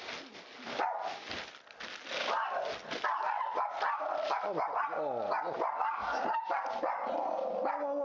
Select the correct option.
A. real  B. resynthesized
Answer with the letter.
A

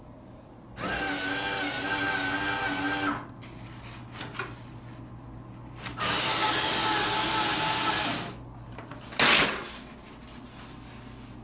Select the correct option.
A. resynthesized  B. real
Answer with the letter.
B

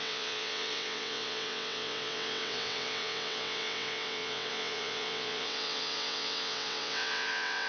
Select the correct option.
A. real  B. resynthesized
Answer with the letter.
B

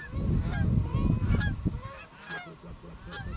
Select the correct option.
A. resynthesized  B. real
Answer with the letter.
B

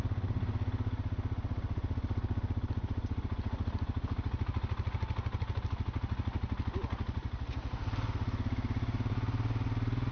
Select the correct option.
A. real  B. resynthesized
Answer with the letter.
A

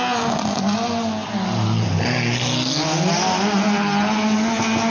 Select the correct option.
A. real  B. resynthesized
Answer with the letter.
A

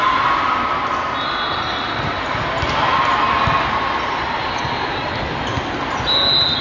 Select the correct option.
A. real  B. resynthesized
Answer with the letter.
A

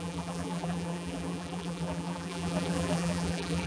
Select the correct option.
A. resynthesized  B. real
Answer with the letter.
A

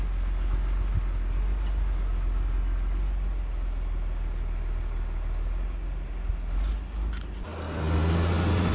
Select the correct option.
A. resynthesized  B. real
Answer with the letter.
B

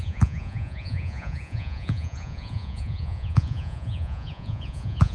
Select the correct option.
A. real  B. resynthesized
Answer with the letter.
B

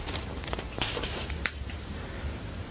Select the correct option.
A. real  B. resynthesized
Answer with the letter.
B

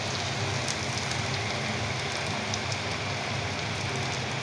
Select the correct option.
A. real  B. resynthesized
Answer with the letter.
A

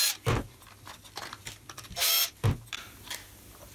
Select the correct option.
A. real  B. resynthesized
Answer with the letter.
A